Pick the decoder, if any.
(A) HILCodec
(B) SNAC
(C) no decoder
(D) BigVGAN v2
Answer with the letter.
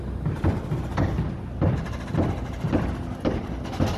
C